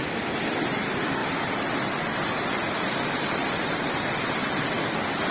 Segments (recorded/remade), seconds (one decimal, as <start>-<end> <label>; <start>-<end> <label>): 0.0-5.3 recorded